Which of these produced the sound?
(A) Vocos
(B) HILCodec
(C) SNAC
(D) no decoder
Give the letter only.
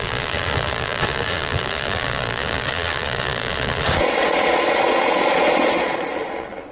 A